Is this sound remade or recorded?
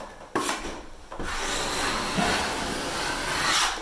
recorded